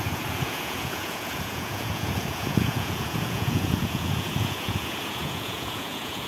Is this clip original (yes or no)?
no